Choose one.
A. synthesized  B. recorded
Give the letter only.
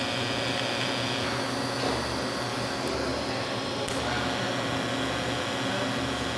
B